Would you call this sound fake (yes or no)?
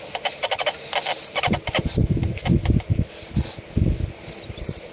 no